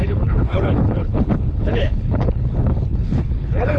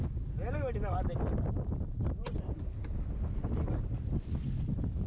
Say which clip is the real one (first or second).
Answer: second